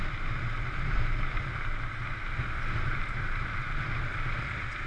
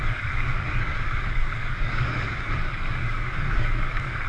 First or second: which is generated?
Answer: second